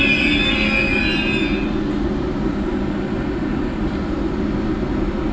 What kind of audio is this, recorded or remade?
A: recorded